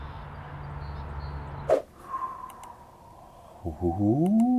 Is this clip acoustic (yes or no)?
yes